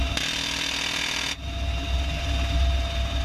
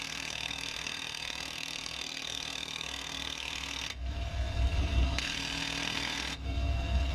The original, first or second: first